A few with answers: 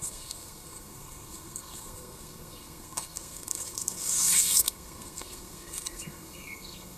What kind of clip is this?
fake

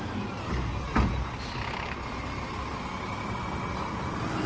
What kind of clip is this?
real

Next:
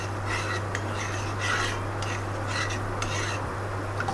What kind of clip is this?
real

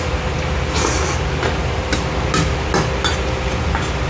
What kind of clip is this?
real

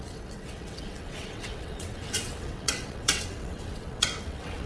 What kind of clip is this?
fake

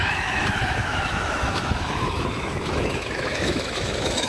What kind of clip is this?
fake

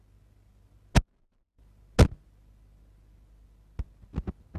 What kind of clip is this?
real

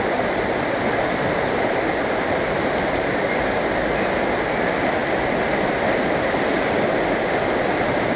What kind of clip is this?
real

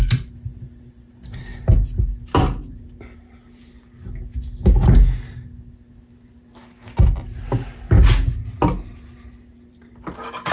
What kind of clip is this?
real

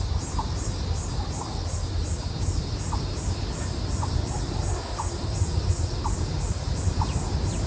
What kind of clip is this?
real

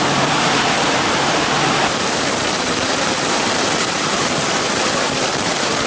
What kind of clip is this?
fake